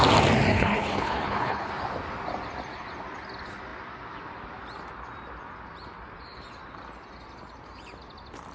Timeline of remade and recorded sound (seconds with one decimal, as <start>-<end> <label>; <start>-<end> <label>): 0.0-0.5 recorded; 0.5-1.7 remade; 1.7-8.5 recorded